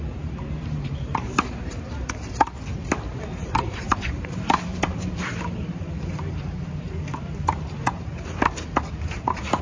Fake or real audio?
fake